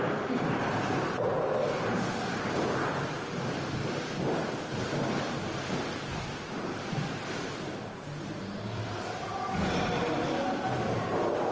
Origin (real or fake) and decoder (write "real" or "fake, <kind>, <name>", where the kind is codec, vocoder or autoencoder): fake, vocoder, BigVGAN v2